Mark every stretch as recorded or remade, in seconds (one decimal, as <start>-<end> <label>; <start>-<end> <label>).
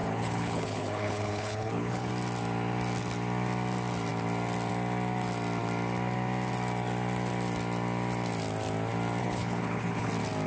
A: 0.0-2.1 remade; 2.1-9.2 recorded; 9.2-10.1 remade; 10.1-10.5 recorded